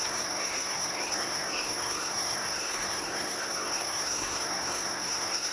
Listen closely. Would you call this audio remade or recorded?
remade